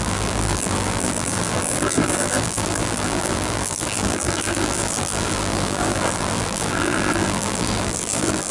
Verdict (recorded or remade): remade